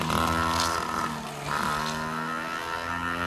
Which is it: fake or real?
real